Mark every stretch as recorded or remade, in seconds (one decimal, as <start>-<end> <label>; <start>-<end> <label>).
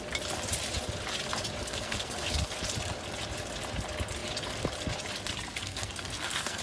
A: 0.0-1.6 recorded; 1.6-2.5 remade; 2.5-5.6 recorded; 5.6-6.6 remade